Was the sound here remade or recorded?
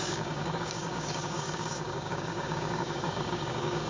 remade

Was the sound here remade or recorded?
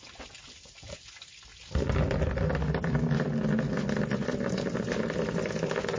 recorded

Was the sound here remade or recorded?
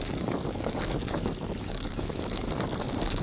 remade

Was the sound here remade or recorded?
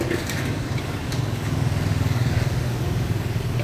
remade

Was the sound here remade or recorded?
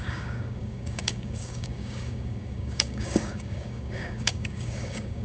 remade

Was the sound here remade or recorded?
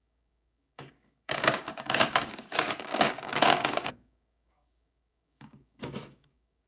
remade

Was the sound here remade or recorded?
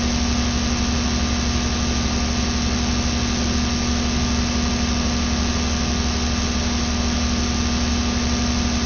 recorded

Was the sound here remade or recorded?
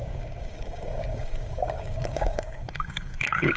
remade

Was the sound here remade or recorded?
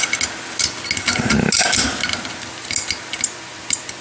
recorded